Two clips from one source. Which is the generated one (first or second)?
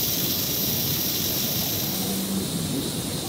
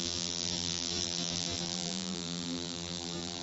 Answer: second